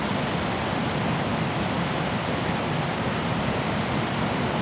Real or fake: real